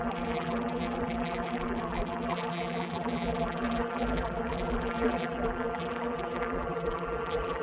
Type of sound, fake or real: fake